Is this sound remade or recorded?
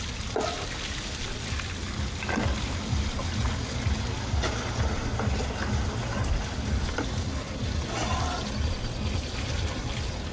recorded